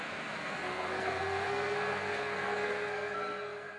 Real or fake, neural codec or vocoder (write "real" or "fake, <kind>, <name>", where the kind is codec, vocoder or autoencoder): fake, codec, SNAC